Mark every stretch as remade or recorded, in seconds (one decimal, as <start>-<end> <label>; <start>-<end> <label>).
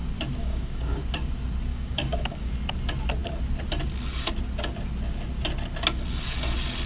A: 0.0-0.4 recorded; 0.4-1.0 remade; 1.0-1.7 recorded; 1.7-2.5 remade; 2.5-6.9 recorded